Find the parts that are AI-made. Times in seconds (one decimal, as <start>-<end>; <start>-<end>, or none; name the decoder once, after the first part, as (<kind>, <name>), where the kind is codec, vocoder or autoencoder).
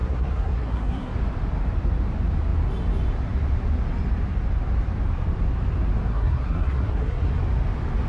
0.0-1.1 (codec, SNAC); 6.1-7.3